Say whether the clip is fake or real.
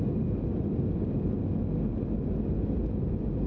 real